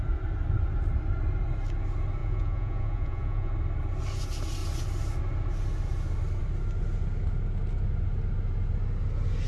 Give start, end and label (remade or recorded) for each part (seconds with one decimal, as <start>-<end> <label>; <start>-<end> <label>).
0.0-2.2 recorded; 2.2-3.5 remade; 3.5-9.5 recorded